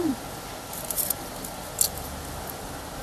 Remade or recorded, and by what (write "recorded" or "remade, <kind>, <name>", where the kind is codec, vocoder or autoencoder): recorded